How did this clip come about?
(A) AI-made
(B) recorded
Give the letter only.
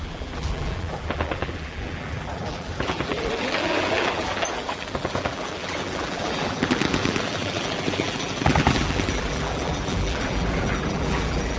A